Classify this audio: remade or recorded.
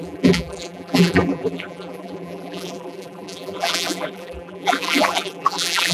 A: remade